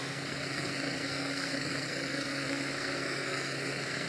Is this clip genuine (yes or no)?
no